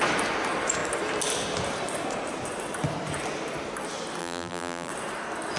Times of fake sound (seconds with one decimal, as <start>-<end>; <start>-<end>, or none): 4.2-4.9